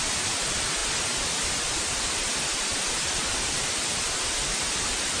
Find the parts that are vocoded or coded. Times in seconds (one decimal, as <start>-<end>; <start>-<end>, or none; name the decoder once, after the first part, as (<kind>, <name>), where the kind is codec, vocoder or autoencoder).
none